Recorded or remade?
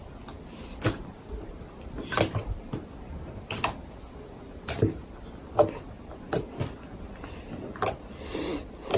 recorded